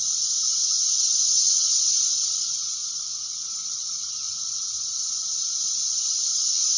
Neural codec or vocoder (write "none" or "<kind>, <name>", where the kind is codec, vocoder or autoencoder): none